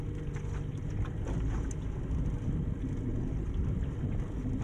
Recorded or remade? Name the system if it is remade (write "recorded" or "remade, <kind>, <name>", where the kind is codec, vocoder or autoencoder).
recorded